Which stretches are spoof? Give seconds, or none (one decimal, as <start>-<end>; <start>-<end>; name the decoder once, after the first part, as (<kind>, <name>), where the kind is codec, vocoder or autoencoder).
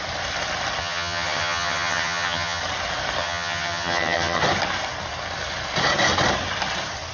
0.8-2.6 (vocoder, HiFi-GAN); 3.2-4.4